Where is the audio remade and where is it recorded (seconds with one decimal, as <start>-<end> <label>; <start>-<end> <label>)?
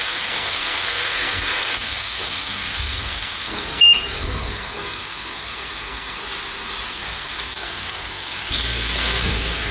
0.0-6.2 remade; 6.2-6.9 recorded; 6.9-9.7 remade